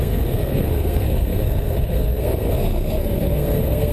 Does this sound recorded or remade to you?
remade